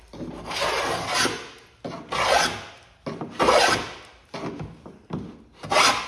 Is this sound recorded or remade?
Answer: recorded